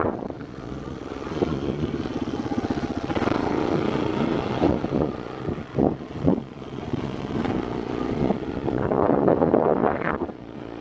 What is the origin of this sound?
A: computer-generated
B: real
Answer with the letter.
A